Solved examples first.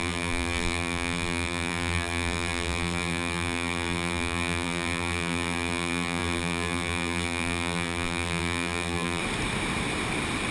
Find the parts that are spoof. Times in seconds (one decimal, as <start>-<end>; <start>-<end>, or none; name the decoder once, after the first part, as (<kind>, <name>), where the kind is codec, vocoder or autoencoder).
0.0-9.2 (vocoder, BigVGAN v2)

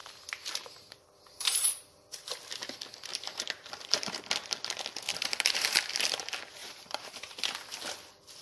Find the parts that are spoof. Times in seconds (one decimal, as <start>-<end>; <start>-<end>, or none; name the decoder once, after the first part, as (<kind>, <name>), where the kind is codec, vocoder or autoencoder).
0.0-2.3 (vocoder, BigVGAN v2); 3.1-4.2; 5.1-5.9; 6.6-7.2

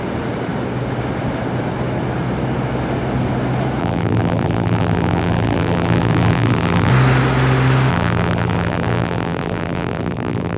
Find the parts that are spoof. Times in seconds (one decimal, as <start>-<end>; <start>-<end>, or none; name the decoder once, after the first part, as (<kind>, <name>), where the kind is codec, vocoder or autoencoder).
3.8-6.9 (vocoder, BigVGAN v2); 7.9-10.6

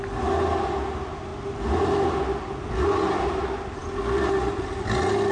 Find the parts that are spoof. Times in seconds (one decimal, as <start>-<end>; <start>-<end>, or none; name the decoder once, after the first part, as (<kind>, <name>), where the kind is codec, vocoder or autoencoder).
none

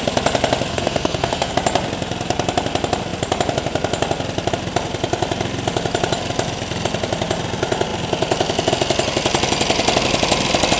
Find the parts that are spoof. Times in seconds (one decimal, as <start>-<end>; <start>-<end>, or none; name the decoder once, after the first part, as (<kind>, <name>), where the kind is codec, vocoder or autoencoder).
0.7-1.5 (codec, SNAC)

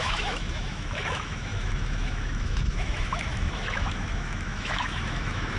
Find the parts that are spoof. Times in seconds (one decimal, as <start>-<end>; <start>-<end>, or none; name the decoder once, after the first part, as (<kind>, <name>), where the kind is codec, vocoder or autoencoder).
0.0-5.6 (autoencoder, DAC-VAE)

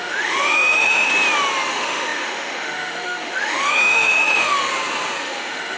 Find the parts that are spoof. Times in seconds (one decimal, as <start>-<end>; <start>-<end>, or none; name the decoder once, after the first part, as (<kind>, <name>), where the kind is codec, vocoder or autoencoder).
0.0-1.1 (autoencoder, DAC-VAE); 1.7-4.7; 5.2-5.8

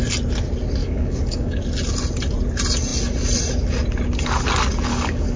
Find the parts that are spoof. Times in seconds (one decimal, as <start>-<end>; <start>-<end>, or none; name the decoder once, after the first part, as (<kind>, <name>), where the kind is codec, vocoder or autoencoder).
0.8-1.6 (codec, DAC); 4.9-5.4